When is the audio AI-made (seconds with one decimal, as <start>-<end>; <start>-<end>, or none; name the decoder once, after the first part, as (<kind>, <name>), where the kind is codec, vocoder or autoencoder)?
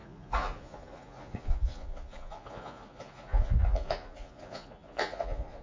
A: 0.0-5.6 (vocoder, Vocos)